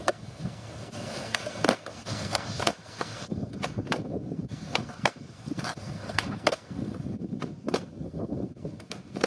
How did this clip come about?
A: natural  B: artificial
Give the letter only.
B